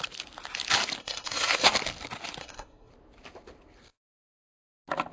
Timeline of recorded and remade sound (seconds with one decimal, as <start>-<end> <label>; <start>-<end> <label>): 0.0-1.0 recorded; 1.0-1.7 remade; 1.7-2.4 recorded; 2.4-2.9 remade; 2.9-5.1 recorded